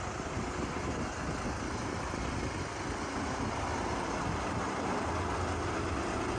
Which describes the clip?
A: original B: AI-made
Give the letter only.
A